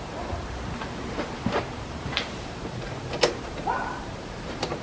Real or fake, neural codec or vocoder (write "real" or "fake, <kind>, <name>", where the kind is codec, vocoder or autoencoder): fake, vocoder, BigVGAN v2